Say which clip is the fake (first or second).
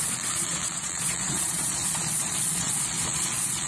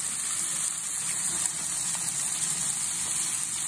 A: first